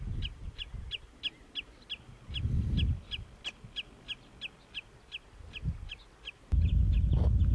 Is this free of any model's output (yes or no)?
yes